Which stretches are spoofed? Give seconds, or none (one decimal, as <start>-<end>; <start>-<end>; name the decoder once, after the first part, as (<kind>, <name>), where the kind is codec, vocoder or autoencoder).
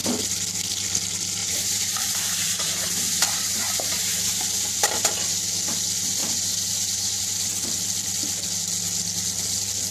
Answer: 1.4-4.2 (vocoder, BigVGAN v2); 6.2-7.2